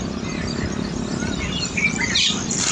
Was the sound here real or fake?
real